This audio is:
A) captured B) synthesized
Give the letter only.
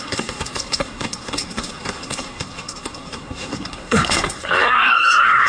B